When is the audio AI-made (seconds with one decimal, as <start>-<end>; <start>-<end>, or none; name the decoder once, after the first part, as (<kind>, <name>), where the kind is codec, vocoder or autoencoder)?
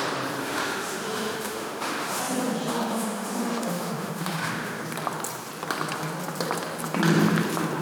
0.4-2.2 (autoencoder, DAC-VAE); 2.7-4.8